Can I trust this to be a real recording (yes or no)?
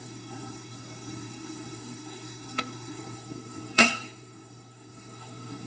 no